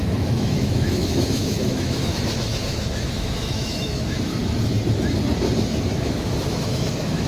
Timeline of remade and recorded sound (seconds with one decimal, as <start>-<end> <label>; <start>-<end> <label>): 0.0-4.4 remade; 4.4-5.9 recorded; 5.9-7.3 remade